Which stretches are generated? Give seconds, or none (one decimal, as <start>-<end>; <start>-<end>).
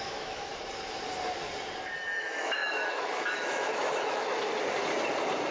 0.0-0.5; 2.2-4.5